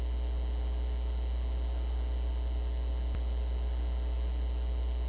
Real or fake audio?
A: real